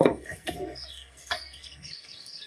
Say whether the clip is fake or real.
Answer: fake